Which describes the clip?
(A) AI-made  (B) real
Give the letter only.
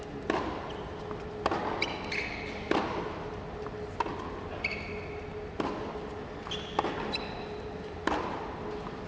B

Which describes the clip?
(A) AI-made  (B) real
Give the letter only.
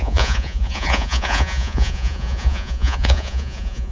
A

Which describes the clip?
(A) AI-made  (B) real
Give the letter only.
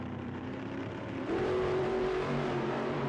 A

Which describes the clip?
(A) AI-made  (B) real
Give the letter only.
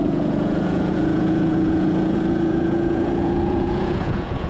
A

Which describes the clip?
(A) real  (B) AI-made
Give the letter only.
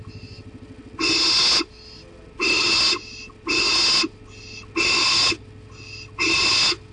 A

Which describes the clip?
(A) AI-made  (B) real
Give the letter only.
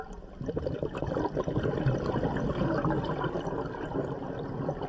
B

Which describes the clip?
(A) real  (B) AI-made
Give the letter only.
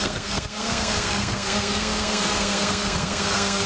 B